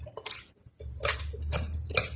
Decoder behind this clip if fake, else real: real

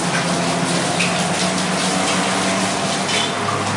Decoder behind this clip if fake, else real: real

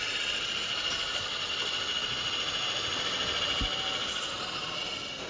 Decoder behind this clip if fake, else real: real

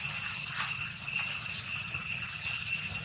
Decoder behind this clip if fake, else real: real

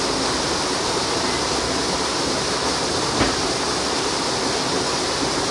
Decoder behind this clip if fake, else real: real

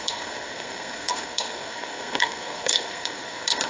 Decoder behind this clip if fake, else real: fake, codec, SNAC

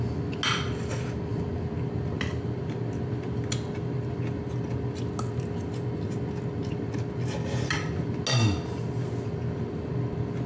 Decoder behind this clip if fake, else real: real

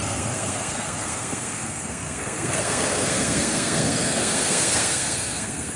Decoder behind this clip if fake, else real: fake, codec, SNAC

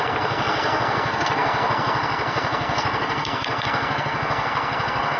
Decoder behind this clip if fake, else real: fake, codec, SNAC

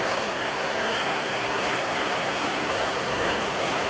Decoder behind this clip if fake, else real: fake, codec, SNAC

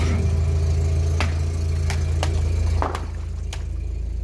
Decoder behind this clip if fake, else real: real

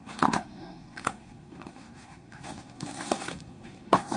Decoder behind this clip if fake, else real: fake, codec, SNAC